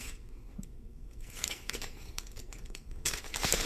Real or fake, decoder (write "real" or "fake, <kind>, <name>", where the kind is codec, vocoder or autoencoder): fake, codec, SNAC